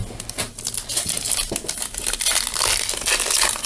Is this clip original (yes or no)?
yes